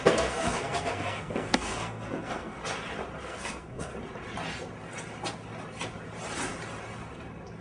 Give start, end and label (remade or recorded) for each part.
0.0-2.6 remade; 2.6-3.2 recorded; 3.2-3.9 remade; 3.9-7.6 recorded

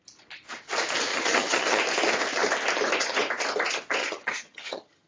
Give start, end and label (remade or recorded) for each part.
0.0-1.1 recorded; 1.1-1.8 remade; 1.8-4.0 recorded; 4.0-5.1 remade

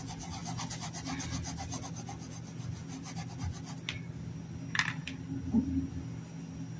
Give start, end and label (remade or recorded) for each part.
0.0-6.8 recorded

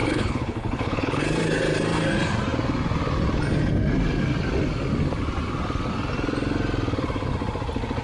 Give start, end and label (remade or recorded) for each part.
0.0-1.2 remade; 1.2-8.0 recorded

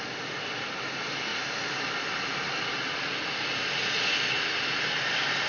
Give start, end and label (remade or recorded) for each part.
0.0-5.5 recorded